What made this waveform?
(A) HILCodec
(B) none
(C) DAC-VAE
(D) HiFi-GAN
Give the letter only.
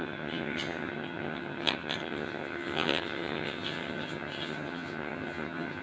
D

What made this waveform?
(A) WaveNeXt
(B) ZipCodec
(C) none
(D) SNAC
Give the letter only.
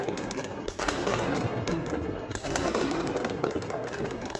D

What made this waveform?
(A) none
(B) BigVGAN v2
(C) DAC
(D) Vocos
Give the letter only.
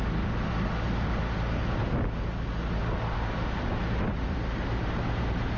A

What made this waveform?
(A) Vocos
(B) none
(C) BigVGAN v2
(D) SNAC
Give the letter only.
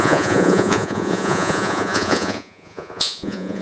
A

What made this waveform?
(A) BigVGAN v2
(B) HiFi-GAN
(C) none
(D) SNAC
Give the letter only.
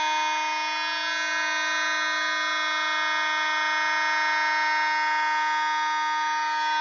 C